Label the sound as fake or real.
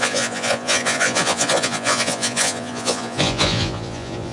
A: fake